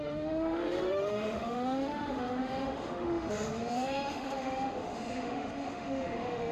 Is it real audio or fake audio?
fake